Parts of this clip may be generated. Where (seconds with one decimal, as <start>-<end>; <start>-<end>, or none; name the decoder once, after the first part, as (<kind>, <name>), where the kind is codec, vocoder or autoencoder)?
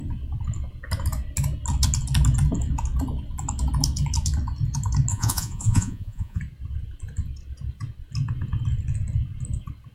5.1-6.4 (vocoder, Vocos)